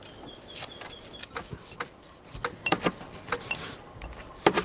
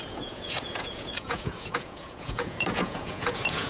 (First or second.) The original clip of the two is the first